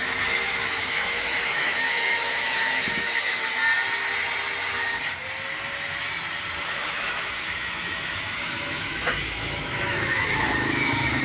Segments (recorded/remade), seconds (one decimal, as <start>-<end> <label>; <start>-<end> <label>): 0.0-3.5 remade; 3.5-6.6 recorded; 6.6-11.2 remade

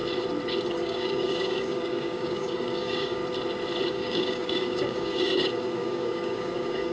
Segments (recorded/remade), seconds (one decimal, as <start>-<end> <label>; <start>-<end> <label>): 0.0-0.7 recorded; 0.7-3.2 remade; 3.2-3.9 recorded; 3.9-6.9 remade

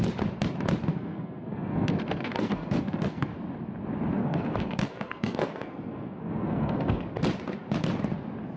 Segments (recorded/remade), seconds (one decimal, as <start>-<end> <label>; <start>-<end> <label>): 0.0-0.9 recorded; 0.9-3.3 remade; 3.3-4.2 recorded; 4.2-7.0 remade; 7.0-8.6 recorded